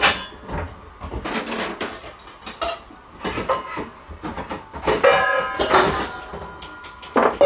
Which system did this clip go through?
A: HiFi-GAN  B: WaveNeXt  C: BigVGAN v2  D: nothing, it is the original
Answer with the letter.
D